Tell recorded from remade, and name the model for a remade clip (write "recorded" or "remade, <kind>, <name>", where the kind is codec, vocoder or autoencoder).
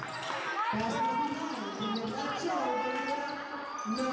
recorded